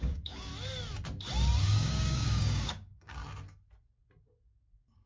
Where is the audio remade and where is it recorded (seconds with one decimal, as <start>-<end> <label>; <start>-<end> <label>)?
0.0-0.5 remade; 0.5-1.6 recorded; 1.6-3.2 remade; 3.2-4.5 recorded; 4.5-5.1 remade